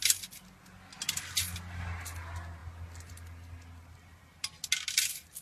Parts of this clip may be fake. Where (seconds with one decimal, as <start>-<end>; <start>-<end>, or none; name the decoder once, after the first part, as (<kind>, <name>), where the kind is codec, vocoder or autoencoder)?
none